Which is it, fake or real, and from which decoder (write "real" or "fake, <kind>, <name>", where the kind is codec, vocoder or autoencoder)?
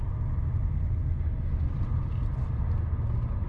real